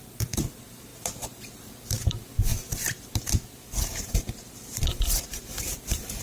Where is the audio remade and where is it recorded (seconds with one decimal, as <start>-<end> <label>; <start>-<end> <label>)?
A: 0.0-6.2 remade